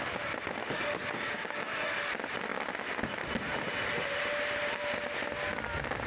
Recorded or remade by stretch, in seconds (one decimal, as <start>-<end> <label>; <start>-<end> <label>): 0.0-0.6 recorded; 0.6-2.0 remade; 2.0-6.1 recorded

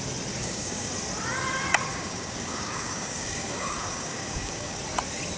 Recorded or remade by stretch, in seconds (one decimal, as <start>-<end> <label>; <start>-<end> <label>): 0.0-0.4 recorded; 0.4-0.9 remade; 0.9-1.9 recorded; 1.9-4.8 remade; 4.8-5.4 recorded